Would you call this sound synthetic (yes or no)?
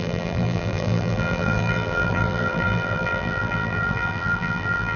yes